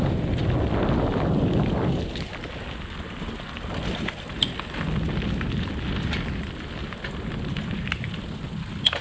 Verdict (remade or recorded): recorded